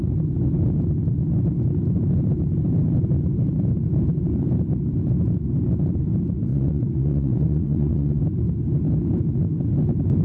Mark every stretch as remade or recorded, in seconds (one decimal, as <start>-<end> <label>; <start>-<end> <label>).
0.0-6.5 recorded; 6.5-8.2 remade; 8.2-10.2 recorded